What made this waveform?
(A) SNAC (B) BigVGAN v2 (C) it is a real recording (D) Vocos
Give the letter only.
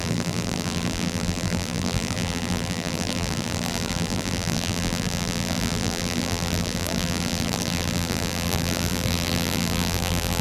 B